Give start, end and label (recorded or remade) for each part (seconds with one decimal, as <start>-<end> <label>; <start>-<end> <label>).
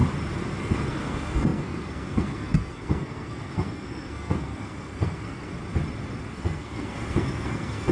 0.0-0.6 recorded; 0.6-5.5 remade; 5.5-6.3 recorded; 6.3-7.9 remade